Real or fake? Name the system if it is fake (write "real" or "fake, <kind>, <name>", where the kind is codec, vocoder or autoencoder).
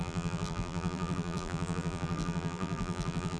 fake, vocoder, BigVGAN v2